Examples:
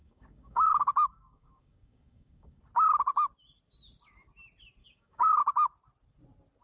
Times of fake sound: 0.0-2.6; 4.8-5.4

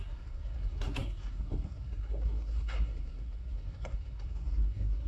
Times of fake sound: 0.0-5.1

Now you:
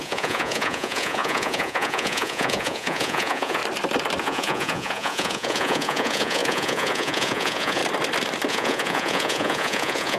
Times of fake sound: 0.0-3.6; 4.2-7.8; 8.5-10.2